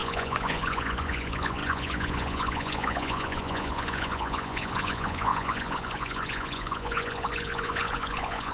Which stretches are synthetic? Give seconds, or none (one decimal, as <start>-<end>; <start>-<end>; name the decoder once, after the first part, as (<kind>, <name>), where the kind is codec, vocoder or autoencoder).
0.0-8.5 (vocoder, Vocos)